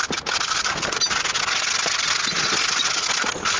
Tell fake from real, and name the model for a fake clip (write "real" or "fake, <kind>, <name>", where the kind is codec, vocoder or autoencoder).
real